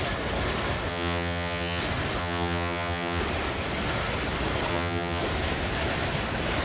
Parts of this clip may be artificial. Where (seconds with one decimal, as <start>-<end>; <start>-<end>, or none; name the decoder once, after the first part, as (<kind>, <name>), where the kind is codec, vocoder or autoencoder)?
0.9-1.8 (vocoder, HiFi-GAN); 2.2-3.2; 4.7-5.2